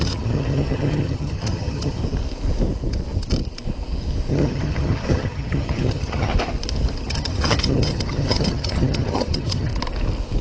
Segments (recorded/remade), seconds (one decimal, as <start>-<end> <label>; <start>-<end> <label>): 0.0-2.0 remade; 2.0-4.3 recorded; 4.3-6.3 remade; 6.3-7.1 recorded; 7.1-9.7 remade; 9.7-10.4 recorded